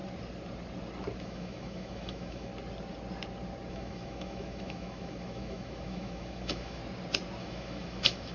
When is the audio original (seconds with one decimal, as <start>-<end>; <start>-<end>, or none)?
0.0-1.2; 2.5-3.7; 6.8-7.4